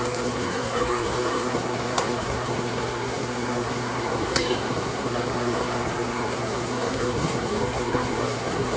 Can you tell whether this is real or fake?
fake